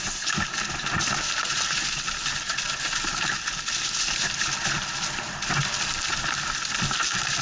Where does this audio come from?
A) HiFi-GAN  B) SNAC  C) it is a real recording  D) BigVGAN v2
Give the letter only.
C